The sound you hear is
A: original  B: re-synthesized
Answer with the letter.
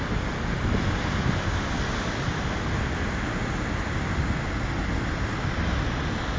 A